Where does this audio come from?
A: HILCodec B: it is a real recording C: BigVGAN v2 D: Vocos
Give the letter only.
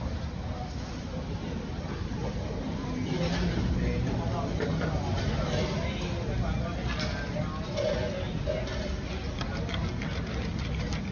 B